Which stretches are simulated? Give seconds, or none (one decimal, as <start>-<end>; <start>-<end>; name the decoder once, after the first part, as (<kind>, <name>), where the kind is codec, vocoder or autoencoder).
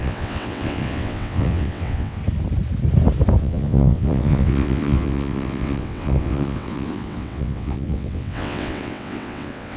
0.0-2.2 (vocoder, WaveNeXt); 3.4-9.8